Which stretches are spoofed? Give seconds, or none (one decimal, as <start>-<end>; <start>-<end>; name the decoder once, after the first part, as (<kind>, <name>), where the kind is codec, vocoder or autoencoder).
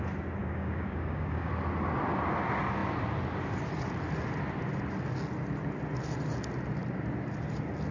0.4-1.5 (codec, DAC)